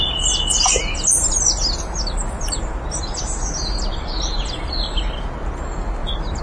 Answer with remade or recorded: recorded